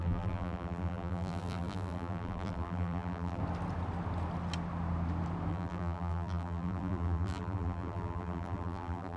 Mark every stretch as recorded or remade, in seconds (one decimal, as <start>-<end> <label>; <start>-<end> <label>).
0.0-3.4 remade; 3.4-5.5 recorded; 5.5-9.2 remade